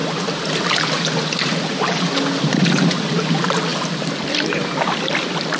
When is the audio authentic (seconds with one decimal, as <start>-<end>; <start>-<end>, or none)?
0.0-5.6